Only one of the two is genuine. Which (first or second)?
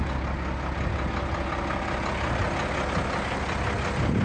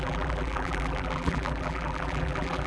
first